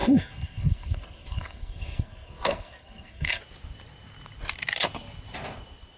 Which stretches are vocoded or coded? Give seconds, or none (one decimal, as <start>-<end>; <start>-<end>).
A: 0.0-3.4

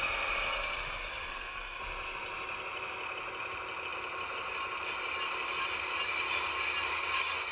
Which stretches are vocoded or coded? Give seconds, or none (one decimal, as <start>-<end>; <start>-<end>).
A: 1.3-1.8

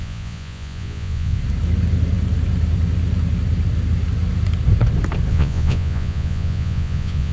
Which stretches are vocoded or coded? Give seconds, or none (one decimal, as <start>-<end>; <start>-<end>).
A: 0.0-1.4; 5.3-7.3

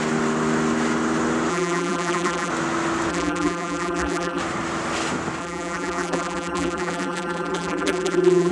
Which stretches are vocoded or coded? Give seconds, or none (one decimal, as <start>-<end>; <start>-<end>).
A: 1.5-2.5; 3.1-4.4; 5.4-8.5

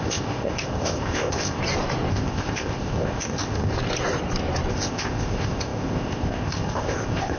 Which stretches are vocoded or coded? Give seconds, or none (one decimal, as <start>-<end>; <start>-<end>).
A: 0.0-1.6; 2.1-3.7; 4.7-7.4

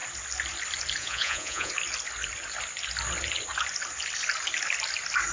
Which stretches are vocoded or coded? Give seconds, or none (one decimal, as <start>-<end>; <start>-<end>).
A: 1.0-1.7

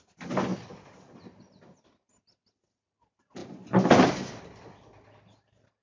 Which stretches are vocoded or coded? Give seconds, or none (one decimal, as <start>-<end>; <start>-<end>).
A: none